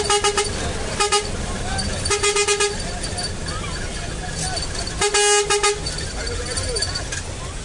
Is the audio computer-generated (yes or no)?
no